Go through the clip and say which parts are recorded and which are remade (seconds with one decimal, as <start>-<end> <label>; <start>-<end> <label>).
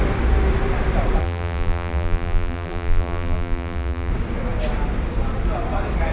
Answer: 0.0-1.2 recorded; 1.2-4.1 remade; 4.1-6.1 recorded